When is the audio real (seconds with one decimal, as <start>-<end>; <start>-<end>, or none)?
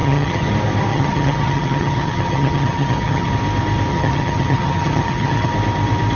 0.5-0.9; 3.3-3.9; 5.5-6.1